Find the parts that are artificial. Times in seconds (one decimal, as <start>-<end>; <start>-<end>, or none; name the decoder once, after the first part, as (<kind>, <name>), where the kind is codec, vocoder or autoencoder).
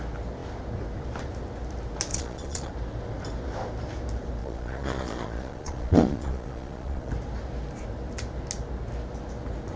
2.1-2.7 (vocoder, Vocos); 4.4-7.1